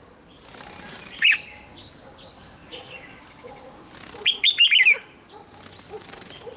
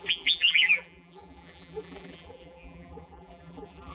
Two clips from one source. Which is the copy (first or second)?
second